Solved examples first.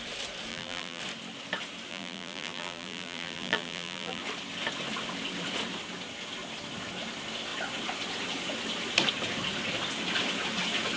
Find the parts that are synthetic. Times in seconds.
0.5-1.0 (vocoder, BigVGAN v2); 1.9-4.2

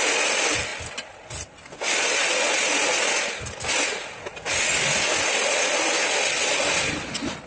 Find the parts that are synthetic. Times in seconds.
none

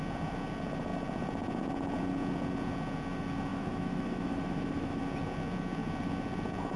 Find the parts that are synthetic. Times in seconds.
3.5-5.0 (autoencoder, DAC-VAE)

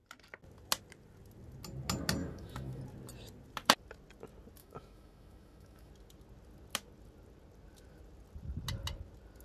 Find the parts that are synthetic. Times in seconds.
2.2-2.8 (autoencoder, DAC-VAE); 4.6-5.9

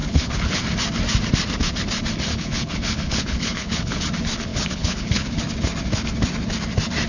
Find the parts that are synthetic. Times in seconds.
0.0-0.6 (codec, HILCodec); 2.3-4.0; 4.5-5.4

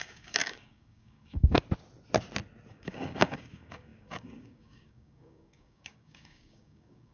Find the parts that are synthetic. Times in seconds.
0.0-1.6 (codec, DAC); 2.7-7.1